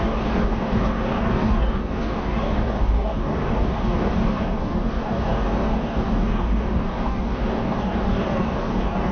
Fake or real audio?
fake